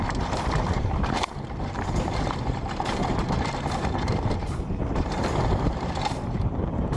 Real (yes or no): no